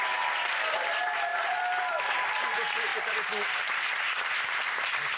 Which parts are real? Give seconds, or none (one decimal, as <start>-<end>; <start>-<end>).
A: 0.0-1.3; 2.0-2.9; 4.8-5.2